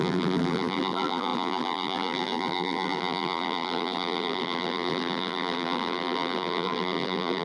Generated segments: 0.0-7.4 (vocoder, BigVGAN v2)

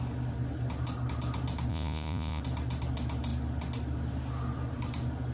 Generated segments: 1.7-2.4 (vocoder, Vocos)

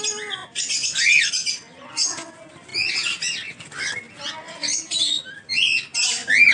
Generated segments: none

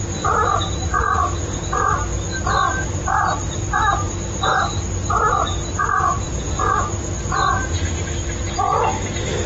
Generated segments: 6.1-6.7 (vocoder, Vocos)

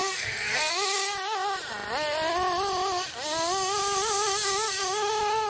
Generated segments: 0.0-0.7 (codec, SNAC)

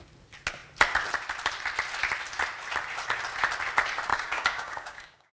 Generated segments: 4.1-5.3 (codec, DAC)